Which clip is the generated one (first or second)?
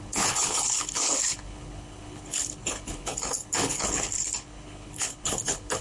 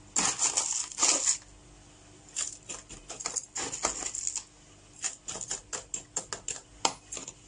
first